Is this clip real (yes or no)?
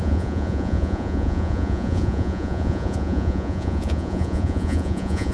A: no